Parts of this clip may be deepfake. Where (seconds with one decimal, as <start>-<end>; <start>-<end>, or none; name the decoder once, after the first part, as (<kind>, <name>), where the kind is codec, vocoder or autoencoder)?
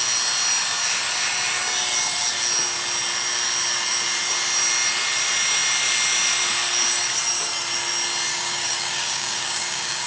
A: 8.3-10.1 (codec, DAC)